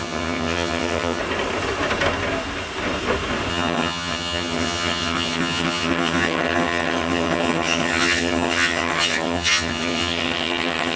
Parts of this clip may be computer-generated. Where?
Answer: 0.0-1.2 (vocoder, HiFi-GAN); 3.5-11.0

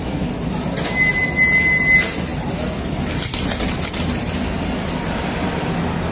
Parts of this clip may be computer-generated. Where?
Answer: none

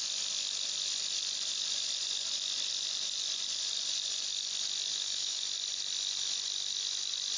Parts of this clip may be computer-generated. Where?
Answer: 4.9-5.4 (autoencoder, DAC-VAE)